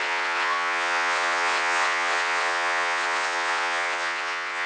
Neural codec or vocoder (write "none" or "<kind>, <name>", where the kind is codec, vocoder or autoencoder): vocoder, WaveNeXt